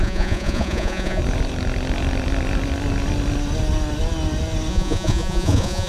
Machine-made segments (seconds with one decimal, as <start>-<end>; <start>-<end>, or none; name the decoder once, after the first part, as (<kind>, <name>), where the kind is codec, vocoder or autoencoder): 0.0-1.2 (vocoder, Vocos); 4.7-5.9